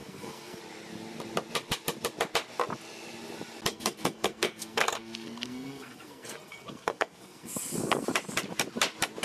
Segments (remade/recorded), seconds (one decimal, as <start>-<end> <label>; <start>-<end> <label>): 0.0-0.6 remade; 0.6-3.7 recorded; 3.7-8.1 remade; 8.1-9.2 recorded